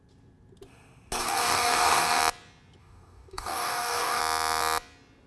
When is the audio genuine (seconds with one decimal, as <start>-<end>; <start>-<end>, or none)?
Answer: 0.0-1.2; 2.2-2.8; 4.2-5.3